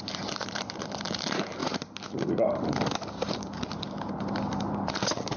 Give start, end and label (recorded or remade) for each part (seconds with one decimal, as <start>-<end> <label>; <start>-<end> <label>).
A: 0.0-5.4 remade